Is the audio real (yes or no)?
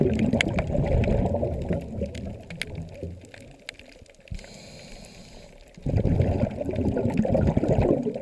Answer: yes